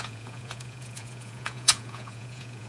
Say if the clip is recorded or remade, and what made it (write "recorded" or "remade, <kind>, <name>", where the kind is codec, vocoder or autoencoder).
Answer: remade, vocoder, Vocos